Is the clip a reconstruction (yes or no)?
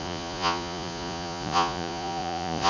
yes